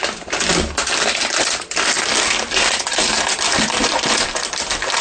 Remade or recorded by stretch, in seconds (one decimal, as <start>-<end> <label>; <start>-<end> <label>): 0.0-5.0 remade